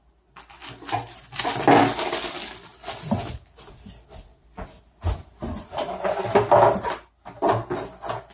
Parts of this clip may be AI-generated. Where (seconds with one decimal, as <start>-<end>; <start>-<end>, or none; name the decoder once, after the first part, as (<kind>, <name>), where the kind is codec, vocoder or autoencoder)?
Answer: none